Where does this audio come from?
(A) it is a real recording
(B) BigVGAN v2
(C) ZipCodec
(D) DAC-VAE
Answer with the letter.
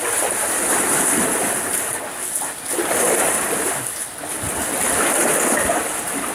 A